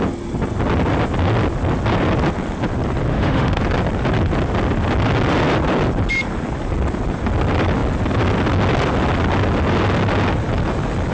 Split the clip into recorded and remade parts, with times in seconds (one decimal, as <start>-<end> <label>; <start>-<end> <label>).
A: 0.0-3.1 recorded; 3.1-3.6 remade; 3.6-11.1 recorded